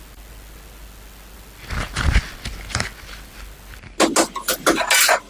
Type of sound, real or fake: real